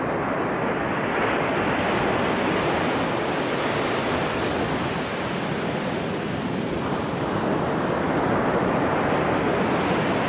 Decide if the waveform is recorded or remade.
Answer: recorded